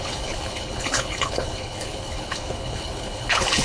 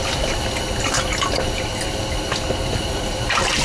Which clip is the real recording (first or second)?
second